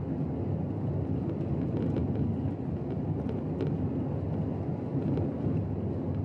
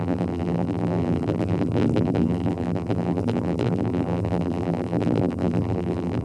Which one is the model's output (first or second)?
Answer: second